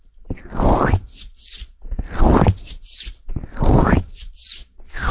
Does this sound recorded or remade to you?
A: recorded